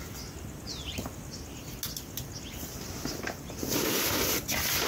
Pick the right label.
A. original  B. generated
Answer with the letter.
A